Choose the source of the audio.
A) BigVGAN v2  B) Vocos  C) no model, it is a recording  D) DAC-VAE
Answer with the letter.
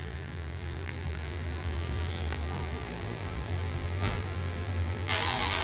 A